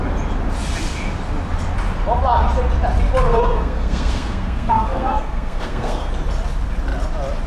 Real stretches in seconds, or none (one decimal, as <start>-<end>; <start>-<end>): 0.0-3.3; 6.1-7.5